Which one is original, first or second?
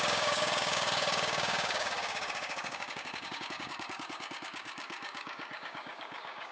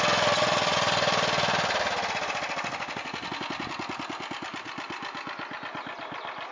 second